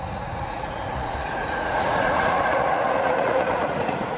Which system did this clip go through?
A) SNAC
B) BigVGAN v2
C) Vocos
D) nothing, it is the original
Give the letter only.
C